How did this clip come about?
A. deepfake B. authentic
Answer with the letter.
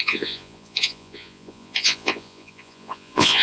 A